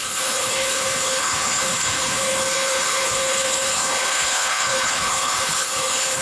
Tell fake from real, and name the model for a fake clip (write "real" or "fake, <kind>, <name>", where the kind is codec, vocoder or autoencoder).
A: fake, codec, HILCodec